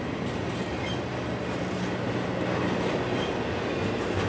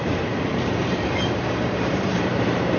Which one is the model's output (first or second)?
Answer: second